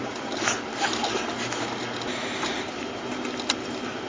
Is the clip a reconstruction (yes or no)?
no